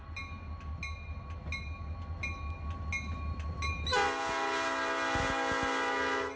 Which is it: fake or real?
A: real